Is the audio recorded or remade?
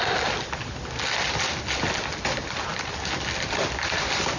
recorded